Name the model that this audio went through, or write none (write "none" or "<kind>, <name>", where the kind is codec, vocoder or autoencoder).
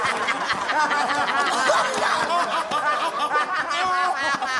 none